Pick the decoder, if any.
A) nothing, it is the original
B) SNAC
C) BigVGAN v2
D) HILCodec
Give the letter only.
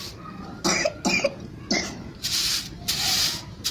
C